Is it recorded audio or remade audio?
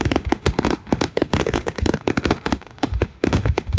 remade